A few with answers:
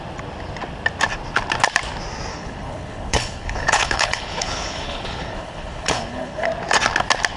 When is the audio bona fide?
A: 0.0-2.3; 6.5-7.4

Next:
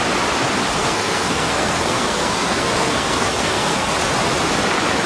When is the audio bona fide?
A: 0.0-0.8; 3.9-5.1

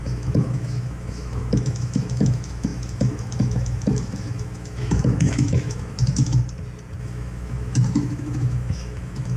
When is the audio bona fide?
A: 6.4-7.0

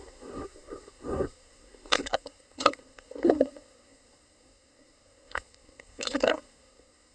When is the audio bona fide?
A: none

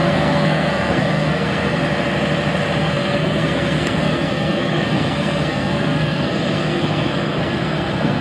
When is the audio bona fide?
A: 1.8-2.8

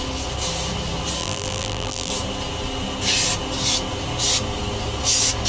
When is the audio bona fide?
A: 0.0-1.2; 2.1-5.5

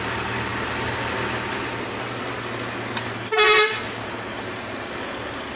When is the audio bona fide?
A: 0.0-5.6

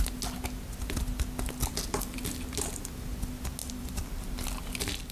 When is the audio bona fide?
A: 0.0-3.6; 4.1-5.1